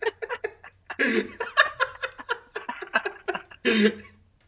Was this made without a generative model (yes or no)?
yes